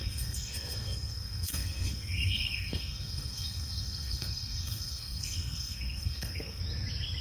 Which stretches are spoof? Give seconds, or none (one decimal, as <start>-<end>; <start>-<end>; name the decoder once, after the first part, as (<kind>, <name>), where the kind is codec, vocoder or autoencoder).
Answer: 0.0-6.6 (codec, SNAC)